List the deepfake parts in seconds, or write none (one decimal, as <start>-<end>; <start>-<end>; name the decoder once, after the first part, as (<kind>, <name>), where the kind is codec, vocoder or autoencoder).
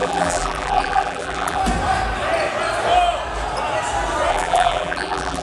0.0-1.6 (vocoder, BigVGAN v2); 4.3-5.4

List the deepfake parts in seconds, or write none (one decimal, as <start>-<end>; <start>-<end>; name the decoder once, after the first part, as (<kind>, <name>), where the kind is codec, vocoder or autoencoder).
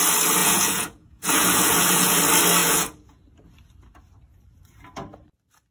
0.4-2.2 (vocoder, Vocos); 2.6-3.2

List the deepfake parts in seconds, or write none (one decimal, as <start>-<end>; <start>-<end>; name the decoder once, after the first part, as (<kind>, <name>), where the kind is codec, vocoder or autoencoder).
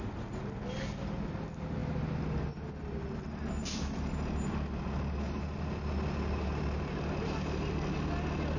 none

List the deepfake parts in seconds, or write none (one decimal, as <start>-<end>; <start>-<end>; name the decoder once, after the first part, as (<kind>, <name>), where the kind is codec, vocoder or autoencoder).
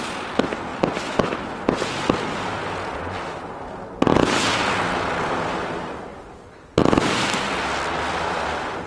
none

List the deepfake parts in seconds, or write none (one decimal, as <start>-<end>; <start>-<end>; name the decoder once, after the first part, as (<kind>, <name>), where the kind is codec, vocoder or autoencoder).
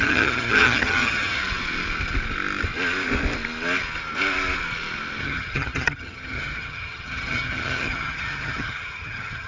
0.0-1.4 (vocoder, HiFi-GAN); 5.2-9.5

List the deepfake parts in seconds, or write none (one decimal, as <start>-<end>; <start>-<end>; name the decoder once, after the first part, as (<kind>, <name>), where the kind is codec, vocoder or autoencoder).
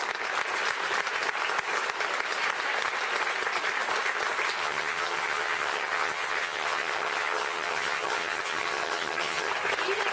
4.6-9.5 (vocoder, HiFi-GAN)